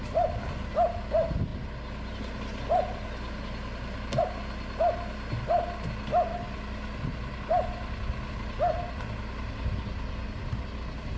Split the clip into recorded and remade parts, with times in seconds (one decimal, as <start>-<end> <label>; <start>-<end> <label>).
0.0-11.2 recorded